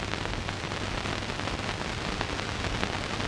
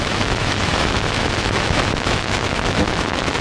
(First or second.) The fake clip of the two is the second